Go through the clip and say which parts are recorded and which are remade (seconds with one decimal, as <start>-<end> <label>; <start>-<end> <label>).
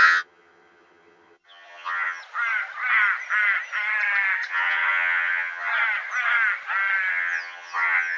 0.0-2.2 remade; 2.2-4.5 recorded; 4.5-5.7 remade; 5.7-7.1 recorded; 7.1-8.2 remade